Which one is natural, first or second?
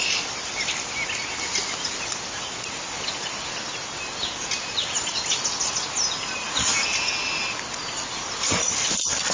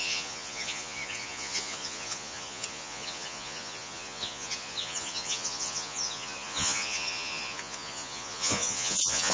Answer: first